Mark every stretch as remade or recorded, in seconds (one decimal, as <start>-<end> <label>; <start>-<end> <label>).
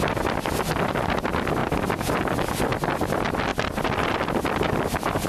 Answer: 0.0-5.3 recorded